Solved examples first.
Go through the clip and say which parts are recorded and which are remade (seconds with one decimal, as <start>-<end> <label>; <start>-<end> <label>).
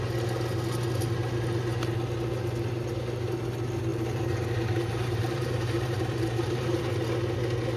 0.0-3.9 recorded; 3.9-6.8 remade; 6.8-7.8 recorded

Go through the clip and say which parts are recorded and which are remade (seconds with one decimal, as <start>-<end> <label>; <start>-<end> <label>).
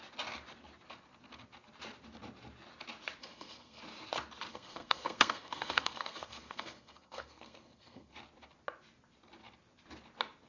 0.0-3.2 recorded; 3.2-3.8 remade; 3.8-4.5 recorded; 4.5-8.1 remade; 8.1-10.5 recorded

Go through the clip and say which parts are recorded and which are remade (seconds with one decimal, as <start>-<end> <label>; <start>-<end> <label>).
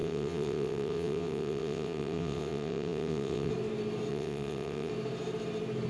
0.0-3.5 remade; 3.5-4.1 recorded; 4.1-4.9 remade; 4.9-5.9 recorded